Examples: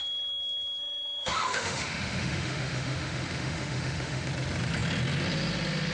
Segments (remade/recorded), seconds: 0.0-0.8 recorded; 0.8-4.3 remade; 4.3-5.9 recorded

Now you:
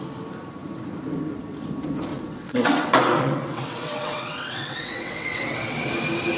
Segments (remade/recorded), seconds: 0.0-2.1 recorded; 2.1-5.9 remade; 5.9-6.4 recorded

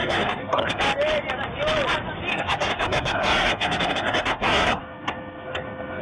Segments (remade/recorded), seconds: 0.0-0.8 remade; 0.8-2.3 recorded; 2.3-6.0 remade

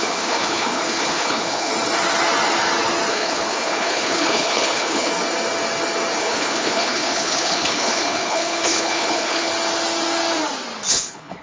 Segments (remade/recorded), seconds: 0.0-1.7 remade; 1.7-3.1 recorded; 3.1-5.1 remade; 5.1-6.2 recorded; 6.2-9.5 remade; 9.5-10.9 recorded; 10.9-11.4 remade

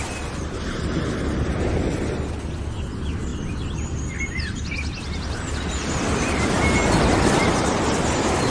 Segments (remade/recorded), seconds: 0.0-8.5 recorded

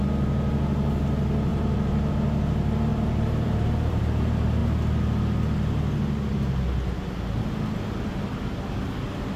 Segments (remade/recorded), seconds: 0.0-1.5 recorded; 1.5-2.1 remade; 2.1-2.9 recorded; 2.9-4.0 remade; 4.0-9.4 recorded

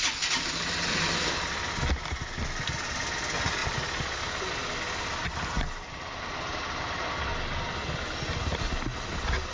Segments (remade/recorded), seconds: 0.0-9.5 recorded